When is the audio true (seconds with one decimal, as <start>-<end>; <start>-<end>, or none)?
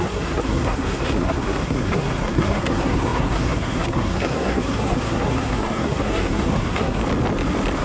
7.0-7.8